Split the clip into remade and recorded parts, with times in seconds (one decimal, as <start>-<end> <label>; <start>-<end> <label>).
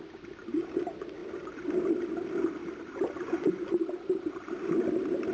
0.0-5.3 recorded